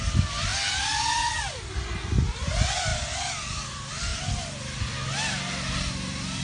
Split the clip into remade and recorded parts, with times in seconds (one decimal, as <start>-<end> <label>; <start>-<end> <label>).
0.0-6.4 recorded